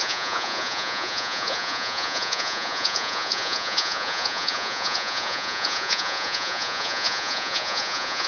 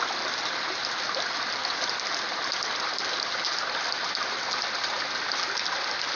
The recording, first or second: second